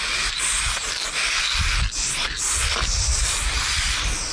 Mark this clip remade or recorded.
recorded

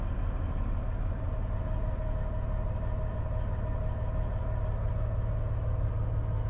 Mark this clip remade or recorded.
recorded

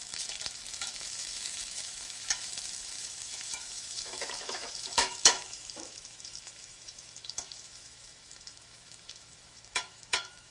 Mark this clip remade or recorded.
remade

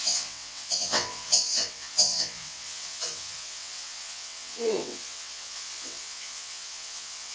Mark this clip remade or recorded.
remade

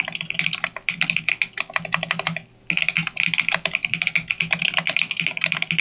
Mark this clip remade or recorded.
recorded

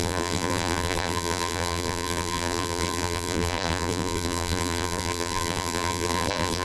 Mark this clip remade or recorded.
remade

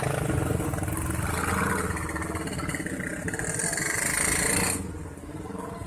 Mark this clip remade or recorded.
recorded